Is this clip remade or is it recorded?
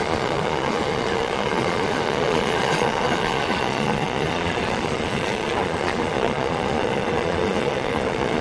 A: remade